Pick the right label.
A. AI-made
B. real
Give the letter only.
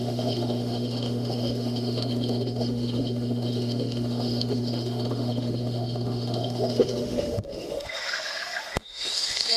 A